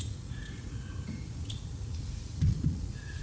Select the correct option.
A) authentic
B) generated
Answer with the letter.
B